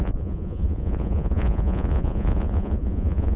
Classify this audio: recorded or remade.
remade